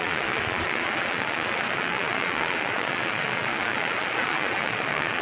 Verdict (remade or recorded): remade